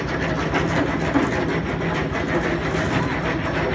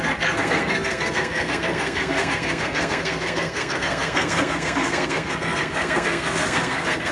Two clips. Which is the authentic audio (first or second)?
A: first